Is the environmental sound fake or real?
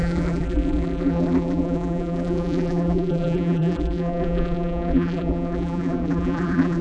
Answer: fake